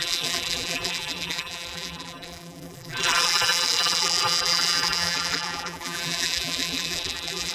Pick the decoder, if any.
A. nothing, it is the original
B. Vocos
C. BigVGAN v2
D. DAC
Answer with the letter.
C